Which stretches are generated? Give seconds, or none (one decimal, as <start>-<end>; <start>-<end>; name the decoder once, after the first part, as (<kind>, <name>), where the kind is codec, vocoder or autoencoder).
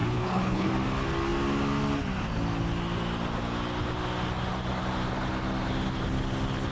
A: 0.0-0.7 (codec, HILCodec)